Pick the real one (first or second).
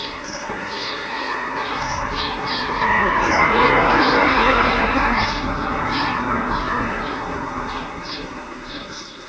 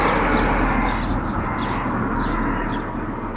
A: second